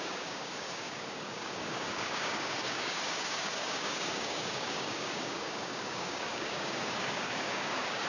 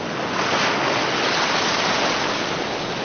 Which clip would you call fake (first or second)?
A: first